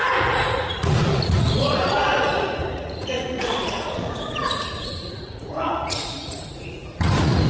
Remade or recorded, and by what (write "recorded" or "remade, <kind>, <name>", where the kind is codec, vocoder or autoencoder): remade, vocoder, Vocos